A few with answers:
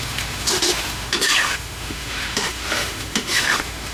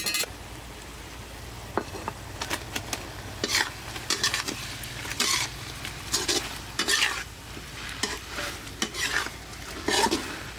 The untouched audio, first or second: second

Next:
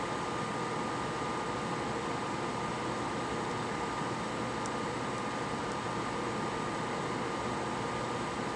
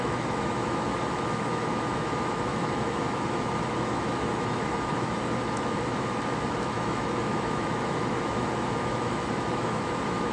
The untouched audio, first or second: first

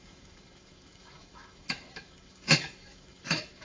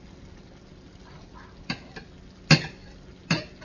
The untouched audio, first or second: second